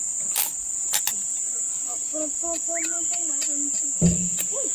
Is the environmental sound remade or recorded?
recorded